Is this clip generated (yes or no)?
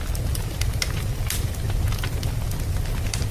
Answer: no